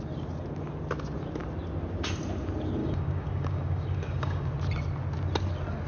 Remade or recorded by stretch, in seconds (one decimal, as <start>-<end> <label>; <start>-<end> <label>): 0.0-2.8 recorded; 2.8-4.5 remade; 4.5-5.9 recorded